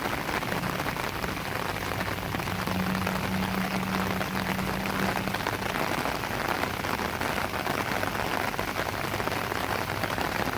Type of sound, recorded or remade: recorded